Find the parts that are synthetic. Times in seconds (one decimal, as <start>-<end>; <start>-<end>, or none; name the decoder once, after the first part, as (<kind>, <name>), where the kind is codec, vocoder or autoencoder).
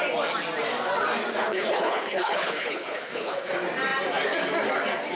1.4-3.5 (codec, HILCodec)